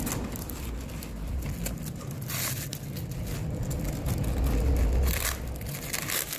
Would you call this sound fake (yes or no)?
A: no